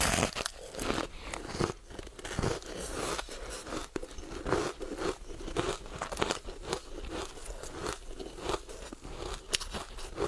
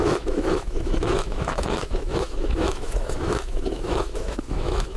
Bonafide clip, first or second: first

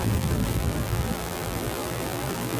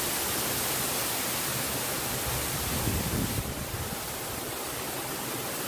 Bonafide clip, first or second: second